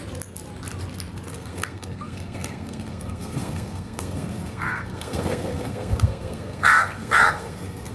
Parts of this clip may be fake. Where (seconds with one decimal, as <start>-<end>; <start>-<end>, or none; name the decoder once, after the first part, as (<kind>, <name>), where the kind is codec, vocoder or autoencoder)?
1.3-7.9 (codec, SNAC)